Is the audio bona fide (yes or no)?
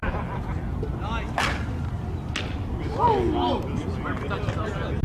yes